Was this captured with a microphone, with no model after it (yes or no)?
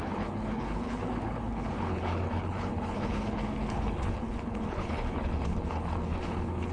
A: no